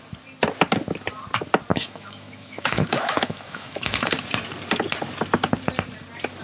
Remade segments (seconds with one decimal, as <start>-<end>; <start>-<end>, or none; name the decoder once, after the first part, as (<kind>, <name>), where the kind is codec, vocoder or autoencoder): 1.7-4.1 (autoencoder, DAC-VAE)